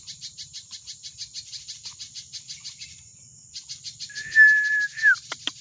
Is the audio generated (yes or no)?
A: no